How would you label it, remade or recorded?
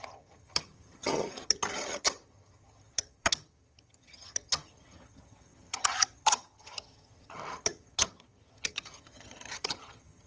remade